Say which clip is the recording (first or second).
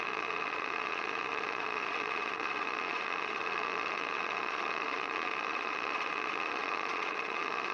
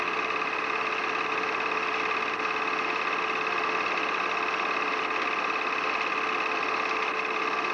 second